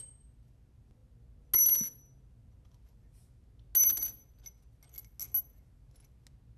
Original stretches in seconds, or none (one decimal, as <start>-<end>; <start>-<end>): 0.0-6.6